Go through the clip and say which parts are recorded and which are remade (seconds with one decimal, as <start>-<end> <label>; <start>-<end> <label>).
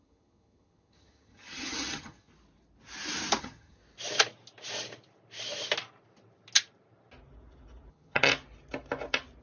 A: 0.0-2.3 remade; 2.3-3.4 recorded; 3.4-3.8 remade; 3.8-7.9 recorded; 7.9-8.3 remade; 8.3-9.4 recorded